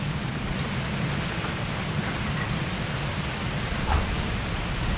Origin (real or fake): real